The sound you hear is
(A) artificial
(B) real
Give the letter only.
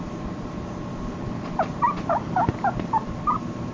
A